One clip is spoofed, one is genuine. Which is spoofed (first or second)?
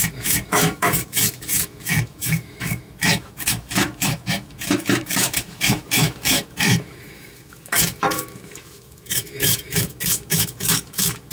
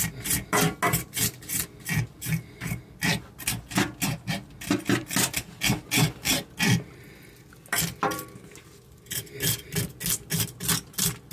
first